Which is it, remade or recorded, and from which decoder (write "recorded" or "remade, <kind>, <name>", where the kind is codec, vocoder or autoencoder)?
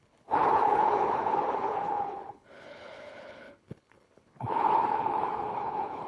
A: remade, codec, HILCodec